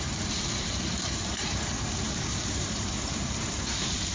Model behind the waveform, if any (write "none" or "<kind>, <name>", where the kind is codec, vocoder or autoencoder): vocoder, BigVGAN v2